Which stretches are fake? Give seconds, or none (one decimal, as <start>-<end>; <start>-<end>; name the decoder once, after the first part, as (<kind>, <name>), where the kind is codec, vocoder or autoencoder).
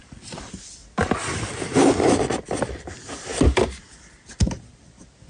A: 0.0-0.8 (vocoder, BigVGAN v2); 1.3-3.3; 3.8-5.3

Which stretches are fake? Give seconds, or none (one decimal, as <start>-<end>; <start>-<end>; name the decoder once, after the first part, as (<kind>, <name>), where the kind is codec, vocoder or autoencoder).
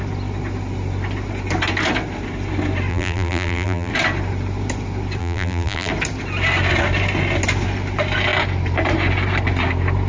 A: 2.9-3.9 (vocoder, BigVGAN v2); 5.2-5.9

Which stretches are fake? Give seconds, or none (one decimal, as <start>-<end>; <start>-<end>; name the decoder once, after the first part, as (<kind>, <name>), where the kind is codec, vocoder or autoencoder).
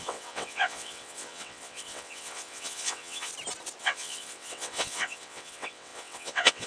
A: 0.0-3.3 (vocoder, WaveNeXt); 3.8-6.7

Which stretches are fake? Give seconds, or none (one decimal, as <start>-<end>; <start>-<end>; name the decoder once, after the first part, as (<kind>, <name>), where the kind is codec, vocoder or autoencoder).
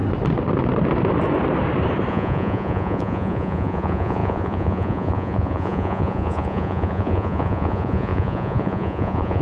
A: 2.1-9.4 (vocoder, Vocos)